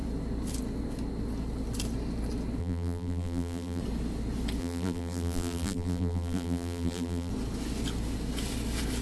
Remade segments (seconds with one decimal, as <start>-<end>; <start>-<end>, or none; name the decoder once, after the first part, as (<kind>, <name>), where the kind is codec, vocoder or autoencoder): 2.6-3.8 (vocoder, BigVGAN v2); 4.6-7.3